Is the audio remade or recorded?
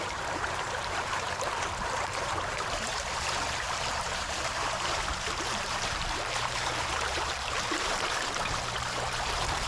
remade